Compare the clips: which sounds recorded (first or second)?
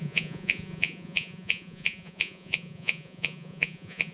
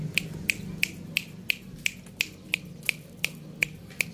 second